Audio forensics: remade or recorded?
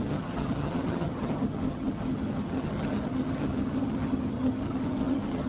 remade